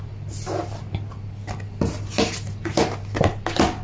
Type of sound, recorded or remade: recorded